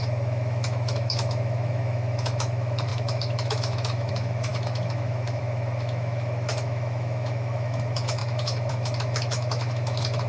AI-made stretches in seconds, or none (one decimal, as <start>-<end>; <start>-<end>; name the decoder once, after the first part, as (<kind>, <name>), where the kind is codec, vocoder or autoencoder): 0.0-10.3 (autoencoder, DAC-VAE)